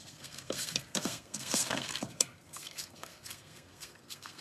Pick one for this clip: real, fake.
fake